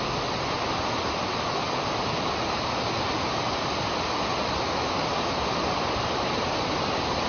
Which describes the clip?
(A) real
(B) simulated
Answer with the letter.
A